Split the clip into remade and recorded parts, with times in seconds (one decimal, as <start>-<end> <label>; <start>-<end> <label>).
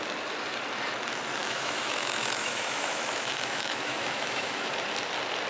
0.0-1.4 recorded; 1.4-4.7 remade; 4.7-5.5 recorded